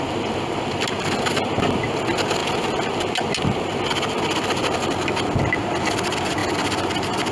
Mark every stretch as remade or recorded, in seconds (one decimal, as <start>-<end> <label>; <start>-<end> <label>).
0.0-7.3 recorded